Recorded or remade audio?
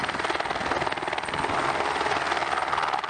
recorded